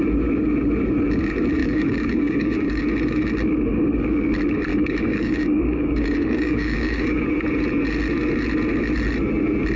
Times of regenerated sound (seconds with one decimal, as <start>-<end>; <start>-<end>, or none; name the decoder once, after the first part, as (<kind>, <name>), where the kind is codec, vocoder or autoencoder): 1.6-2.8 (codec, DAC); 4.7-7.2